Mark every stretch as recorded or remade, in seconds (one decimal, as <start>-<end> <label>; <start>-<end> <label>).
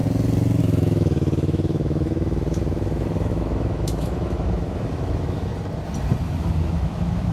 0.0-0.6 recorded; 0.6-5.5 remade; 5.5-6.2 recorded; 6.2-7.3 remade